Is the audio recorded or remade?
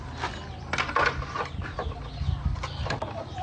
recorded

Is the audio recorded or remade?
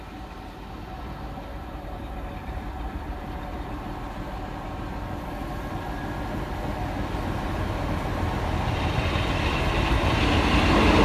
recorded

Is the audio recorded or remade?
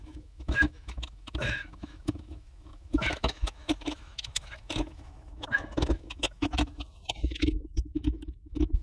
remade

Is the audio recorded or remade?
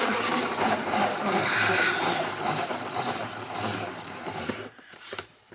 remade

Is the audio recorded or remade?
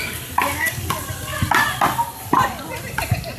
recorded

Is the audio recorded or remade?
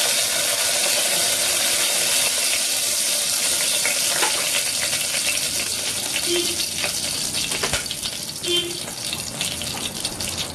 recorded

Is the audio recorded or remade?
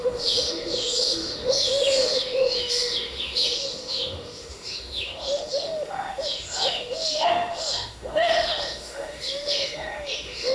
remade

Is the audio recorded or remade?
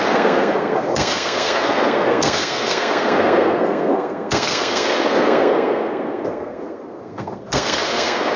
remade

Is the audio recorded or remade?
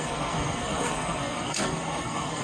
remade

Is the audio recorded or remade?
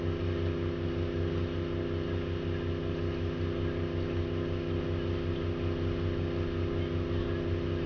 recorded